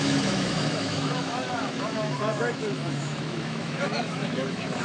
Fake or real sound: fake